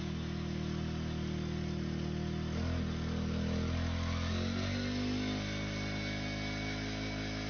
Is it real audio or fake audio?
real